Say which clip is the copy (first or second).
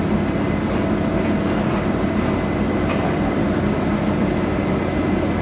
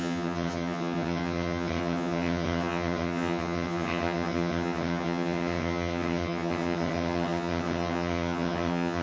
second